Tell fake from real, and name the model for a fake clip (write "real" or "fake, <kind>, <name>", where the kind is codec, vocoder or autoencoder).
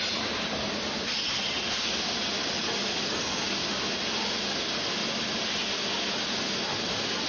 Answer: real